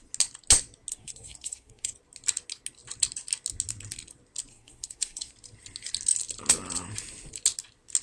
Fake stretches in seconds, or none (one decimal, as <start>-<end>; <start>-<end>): 0.9-1.9; 4.5-5.3